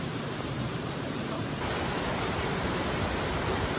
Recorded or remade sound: remade